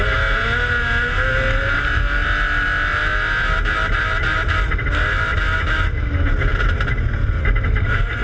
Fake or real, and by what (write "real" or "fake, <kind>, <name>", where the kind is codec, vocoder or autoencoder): real